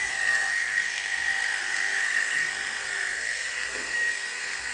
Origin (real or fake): fake